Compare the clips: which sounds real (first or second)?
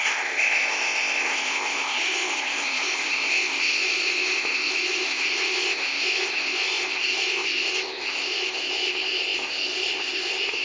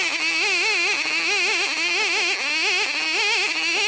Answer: second